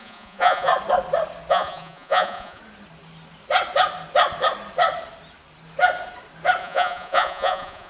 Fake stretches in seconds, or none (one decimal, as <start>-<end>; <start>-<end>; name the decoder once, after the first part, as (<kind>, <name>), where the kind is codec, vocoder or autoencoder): 0.0-0.7 (vocoder, Vocos); 1.5-2.6; 6.6-7.9